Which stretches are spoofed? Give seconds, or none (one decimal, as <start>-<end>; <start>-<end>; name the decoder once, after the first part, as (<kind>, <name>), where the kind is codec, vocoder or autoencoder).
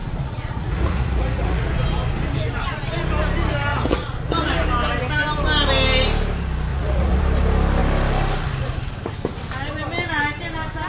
0.0-1.7 (vocoder, Vocos); 3.7-4.5; 6.7-7.2